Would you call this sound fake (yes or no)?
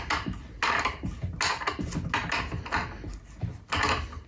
no